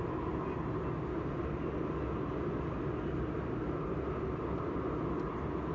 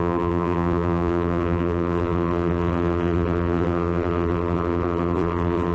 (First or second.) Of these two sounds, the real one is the first